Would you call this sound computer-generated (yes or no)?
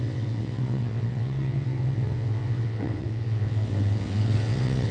yes